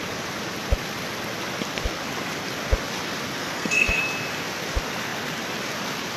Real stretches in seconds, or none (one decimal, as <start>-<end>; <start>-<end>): 0.0-3.4; 4.0-6.2